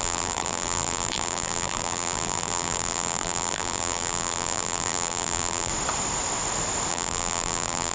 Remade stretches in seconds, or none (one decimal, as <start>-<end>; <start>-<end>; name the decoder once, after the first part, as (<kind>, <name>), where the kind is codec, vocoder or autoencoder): 0.0-5.7 (vocoder, BigVGAN v2); 6.9-7.9